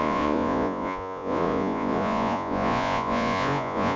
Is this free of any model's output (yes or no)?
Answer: no